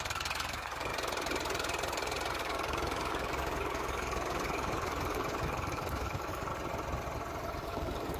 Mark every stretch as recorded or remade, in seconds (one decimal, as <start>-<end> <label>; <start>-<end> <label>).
0.0-0.9 remade; 0.9-2.4 recorded; 2.4-6.5 remade; 6.5-7.6 recorded; 7.6-8.2 remade